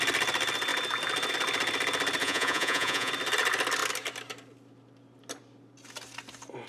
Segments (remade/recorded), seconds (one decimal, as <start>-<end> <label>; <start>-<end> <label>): 0.0-2.2 recorded; 2.2-3.1 remade; 3.1-6.7 recorded